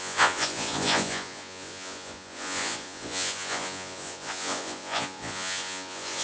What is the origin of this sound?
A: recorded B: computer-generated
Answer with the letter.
B